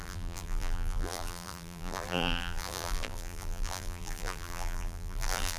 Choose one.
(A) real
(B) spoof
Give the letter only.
B